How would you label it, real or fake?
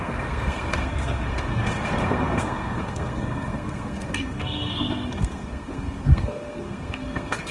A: fake